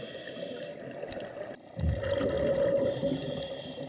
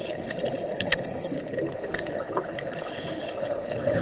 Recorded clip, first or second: first